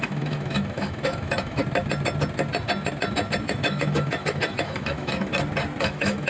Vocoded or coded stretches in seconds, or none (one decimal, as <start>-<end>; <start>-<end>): 0.0-1.6; 3.4-5.3; 5.8-6.3